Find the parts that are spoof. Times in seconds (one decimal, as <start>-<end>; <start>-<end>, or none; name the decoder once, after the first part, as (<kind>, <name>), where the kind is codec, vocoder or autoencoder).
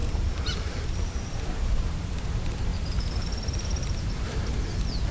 0.0-2.7 (vocoder, BigVGAN v2); 3.9-5.1